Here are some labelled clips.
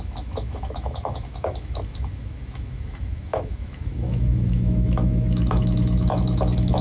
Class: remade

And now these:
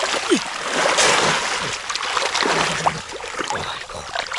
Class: recorded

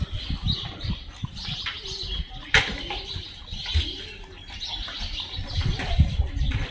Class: recorded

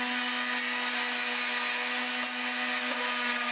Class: recorded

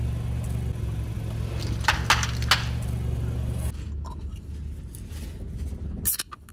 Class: recorded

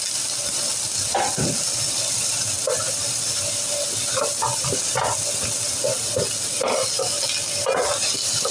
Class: recorded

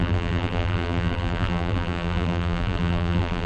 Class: remade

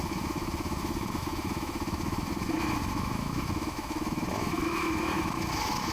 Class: remade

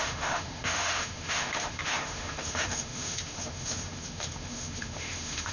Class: remade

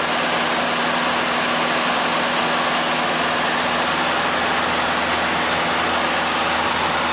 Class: recorded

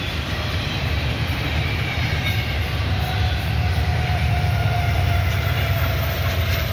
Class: remade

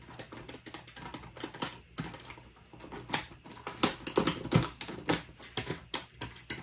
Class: recorded